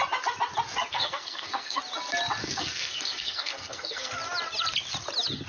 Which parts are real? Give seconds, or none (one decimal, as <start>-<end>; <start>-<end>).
0.0-0.9; 1.8-2.4; 4.1-5.5